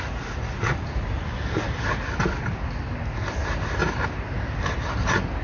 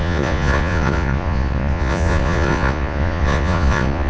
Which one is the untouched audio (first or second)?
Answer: first